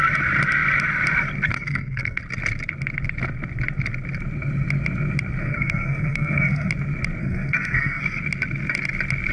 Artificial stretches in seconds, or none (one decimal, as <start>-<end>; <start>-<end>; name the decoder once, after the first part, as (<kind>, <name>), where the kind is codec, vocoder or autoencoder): 1.5-2.2 (codec, SNAC); 5.4-6.7; 7.2-8.0